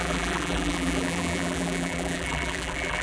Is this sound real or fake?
fake